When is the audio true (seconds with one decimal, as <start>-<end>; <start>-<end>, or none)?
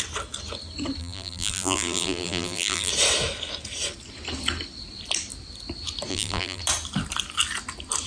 0.0-1.0; 2.9-6.1; 6.6-8.1